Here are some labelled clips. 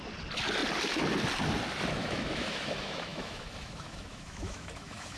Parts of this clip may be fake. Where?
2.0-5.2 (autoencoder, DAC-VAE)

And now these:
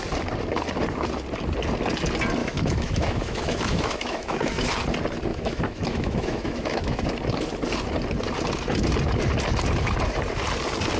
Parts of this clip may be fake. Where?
2.4-4.7 (autoencoder, DAC-VAE); 5.3-7.0

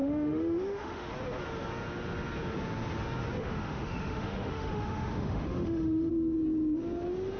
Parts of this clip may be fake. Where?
0.0-1.1 (autoencoder, DAC-VAE); 3.4-6.1

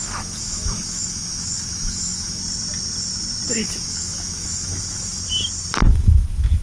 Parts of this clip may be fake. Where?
0.0-2.4 (autoencoder, DAC-VAE); 3.5-5.2; 5.9-6.6

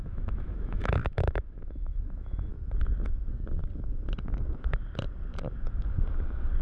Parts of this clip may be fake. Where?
0.0-2.5 (autoencoder, DAC-VAE)